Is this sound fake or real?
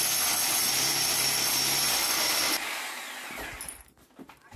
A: real